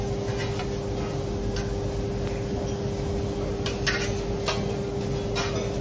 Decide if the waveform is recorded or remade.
recorded